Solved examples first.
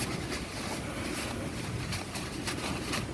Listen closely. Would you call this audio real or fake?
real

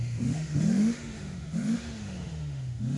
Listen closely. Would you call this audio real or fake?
fake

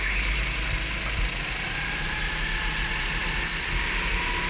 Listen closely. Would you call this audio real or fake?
real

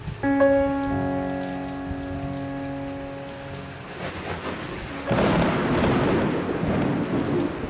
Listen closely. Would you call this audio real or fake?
real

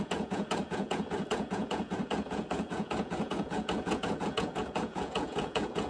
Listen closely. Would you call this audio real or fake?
fake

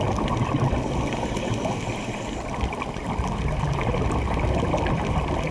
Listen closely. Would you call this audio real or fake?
real